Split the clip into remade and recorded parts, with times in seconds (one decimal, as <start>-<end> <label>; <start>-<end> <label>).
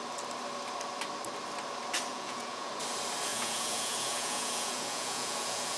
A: 0.0-2.1 recorded; 2.1-2.7 remade; 2.7-3.3 recorded; 3.3-5.8 remade